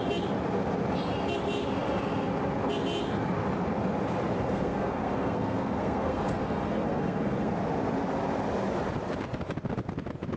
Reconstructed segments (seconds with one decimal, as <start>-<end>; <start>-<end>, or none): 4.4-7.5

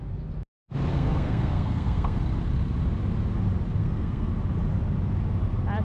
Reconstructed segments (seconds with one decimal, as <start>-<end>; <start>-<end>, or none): 0.9-2.2; 3.8-4.3

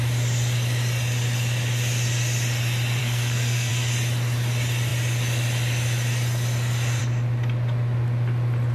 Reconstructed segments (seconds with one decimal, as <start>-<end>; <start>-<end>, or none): 3.0-3.7

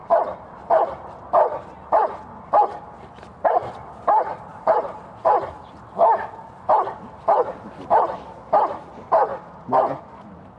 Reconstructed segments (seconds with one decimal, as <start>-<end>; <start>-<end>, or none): none

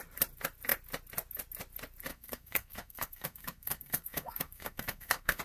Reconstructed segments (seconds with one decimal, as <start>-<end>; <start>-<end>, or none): 2.1-5.4